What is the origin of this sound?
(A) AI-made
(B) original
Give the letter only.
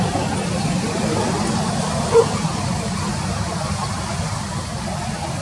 A